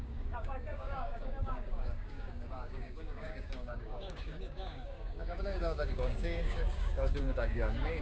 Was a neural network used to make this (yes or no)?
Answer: yes